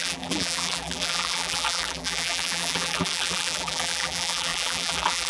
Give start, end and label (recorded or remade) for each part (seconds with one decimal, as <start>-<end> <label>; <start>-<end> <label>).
0.0-5.3 remade